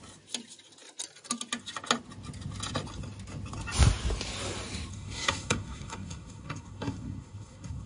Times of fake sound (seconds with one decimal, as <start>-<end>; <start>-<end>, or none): 4.9-7.9